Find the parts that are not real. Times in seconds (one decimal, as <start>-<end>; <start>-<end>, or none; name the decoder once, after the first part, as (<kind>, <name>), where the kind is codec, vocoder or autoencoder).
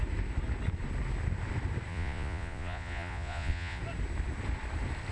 1.9-3.8 (vocoder, Vocos)